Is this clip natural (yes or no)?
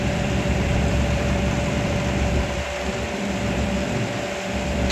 no